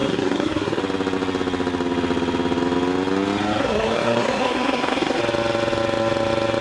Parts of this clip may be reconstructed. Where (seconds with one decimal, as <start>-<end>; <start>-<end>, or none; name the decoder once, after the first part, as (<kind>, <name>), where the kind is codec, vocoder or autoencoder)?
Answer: 0.0-0.8 (codec, SNAC); 3.6-5.2